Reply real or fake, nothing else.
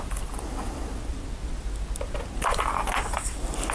real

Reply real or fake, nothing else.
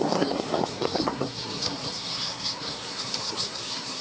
fake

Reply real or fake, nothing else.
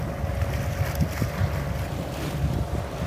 real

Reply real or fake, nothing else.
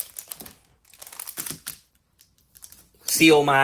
real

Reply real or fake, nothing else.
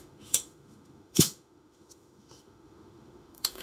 fake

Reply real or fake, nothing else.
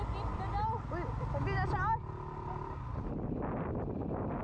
real